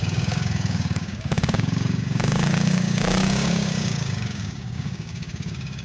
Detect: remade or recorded remade